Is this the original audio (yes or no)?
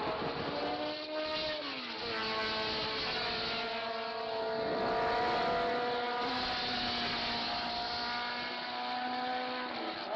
yes